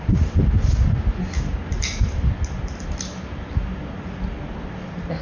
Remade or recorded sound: recorded